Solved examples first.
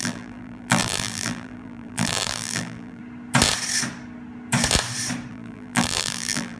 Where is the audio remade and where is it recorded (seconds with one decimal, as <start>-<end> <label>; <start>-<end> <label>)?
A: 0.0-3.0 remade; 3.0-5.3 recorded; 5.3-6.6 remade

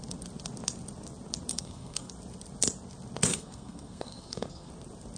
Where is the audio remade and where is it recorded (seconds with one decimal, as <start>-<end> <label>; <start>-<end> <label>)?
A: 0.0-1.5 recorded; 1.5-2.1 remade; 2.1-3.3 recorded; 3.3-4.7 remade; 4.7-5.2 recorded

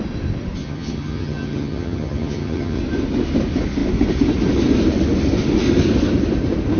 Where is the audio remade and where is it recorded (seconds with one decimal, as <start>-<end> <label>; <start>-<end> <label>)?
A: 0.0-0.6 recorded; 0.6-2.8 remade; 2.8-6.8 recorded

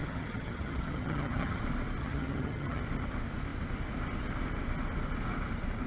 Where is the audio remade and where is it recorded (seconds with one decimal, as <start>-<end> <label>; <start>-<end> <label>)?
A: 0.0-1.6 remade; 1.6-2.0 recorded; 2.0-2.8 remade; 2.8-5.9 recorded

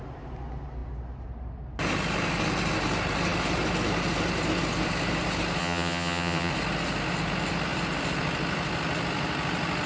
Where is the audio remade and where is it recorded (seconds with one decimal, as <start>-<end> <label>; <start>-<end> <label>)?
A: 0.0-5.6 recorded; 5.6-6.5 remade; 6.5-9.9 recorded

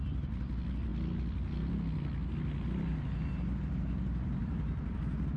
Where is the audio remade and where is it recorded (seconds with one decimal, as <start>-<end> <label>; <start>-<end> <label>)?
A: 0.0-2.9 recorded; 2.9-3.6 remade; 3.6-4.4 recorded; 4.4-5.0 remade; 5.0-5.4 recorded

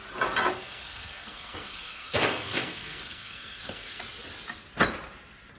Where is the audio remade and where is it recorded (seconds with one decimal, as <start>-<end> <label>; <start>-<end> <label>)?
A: 0.0-0.6 recorded; 0.6-4.0 remade; 4.0-5.6 recorded